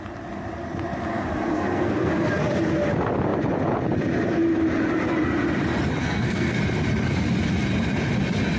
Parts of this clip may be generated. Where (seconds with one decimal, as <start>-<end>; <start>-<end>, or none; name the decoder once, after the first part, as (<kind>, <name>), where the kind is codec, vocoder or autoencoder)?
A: 1.1-2.3 (codec, SNAC); 6.0-6.6

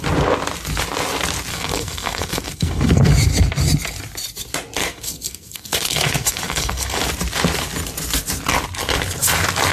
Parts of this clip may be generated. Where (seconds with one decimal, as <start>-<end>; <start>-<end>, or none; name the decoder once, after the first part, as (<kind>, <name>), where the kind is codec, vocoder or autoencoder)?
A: 1.5-3.1 (codec, SNAC); 4.8-7.0